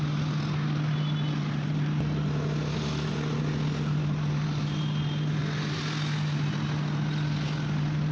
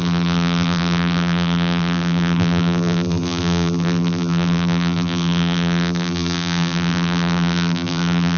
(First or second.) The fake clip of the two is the second